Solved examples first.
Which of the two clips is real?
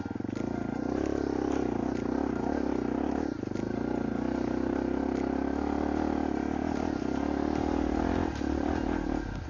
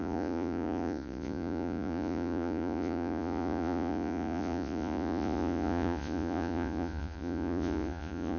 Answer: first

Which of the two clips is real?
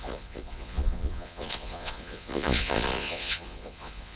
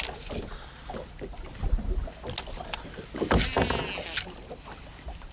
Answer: second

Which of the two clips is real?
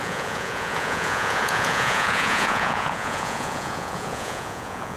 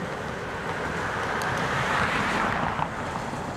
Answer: second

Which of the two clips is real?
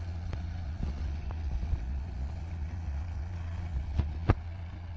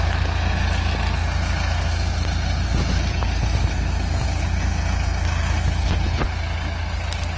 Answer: second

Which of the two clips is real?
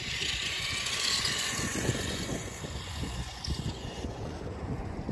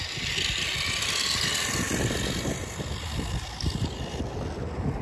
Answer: second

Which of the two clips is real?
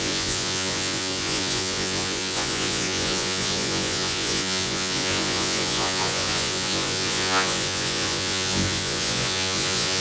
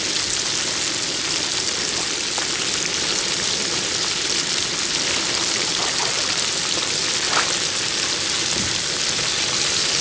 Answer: second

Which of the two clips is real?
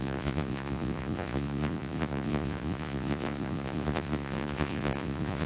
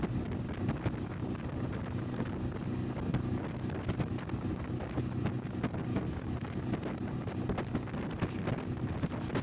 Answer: second